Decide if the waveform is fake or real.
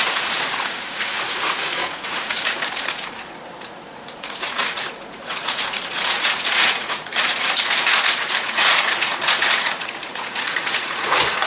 fake